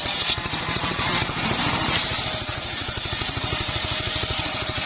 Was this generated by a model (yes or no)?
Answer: yes